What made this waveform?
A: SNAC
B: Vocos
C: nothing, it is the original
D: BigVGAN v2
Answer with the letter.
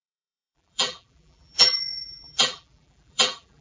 D